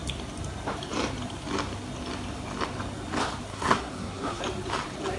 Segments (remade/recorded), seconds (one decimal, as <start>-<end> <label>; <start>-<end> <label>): 0.0-3.5 recorded; 3.5-4.4 remade; 4.4-5.2 recorded